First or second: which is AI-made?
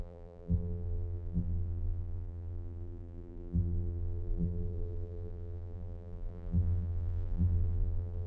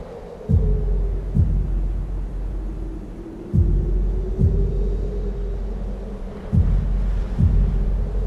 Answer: first